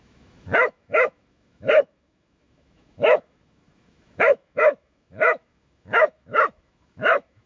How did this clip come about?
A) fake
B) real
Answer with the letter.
A